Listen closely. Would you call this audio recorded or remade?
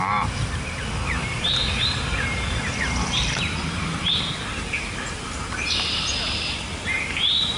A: remade